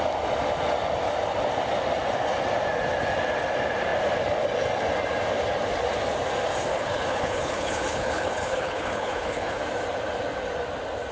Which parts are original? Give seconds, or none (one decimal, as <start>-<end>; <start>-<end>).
0.0-6.7; 9.6-11.1